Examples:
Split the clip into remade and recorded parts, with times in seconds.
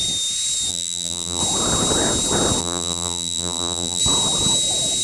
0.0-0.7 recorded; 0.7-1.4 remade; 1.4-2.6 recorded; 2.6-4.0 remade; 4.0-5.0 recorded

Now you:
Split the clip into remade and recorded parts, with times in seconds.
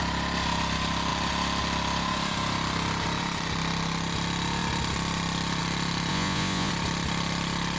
0.0-6.1 recorded; 6.1-6.7 remade; 6.7-7.8 recorded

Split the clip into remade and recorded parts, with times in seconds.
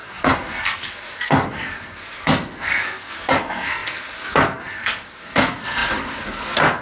0.0-6.8 remade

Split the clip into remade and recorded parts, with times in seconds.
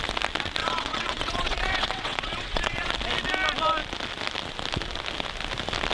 0.0-0.6 recorded; 0.6-2.9 remade; 2.9-5.9 recorded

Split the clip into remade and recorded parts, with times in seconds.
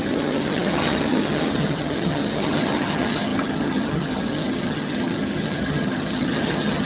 0.0-6.8 remade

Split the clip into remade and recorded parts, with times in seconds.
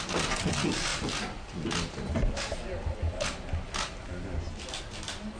0.0-5.4 recorded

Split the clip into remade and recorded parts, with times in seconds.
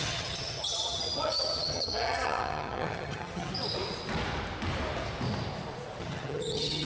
0.0-3.5 remade; 3.5-6.0 recorded; 6.0-6.8 remade